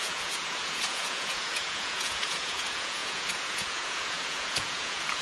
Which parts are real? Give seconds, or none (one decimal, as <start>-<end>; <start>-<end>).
none